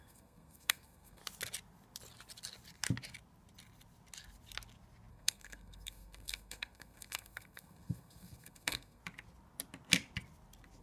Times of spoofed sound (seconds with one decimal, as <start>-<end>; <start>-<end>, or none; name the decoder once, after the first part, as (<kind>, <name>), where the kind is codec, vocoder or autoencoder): 0.0-1.2 (codec, SNAC); 5.1-9.0